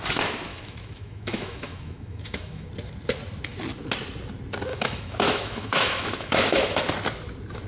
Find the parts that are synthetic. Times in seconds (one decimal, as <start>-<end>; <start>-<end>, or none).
0.5-2.7; 4.7-6.8